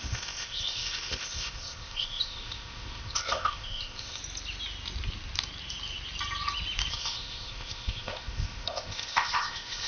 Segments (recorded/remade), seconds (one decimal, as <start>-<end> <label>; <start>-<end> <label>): 0.0-4.2 remade; 4.2-6.9 recorded; 6.9-9.9 remade